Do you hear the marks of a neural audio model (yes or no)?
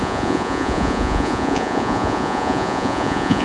yes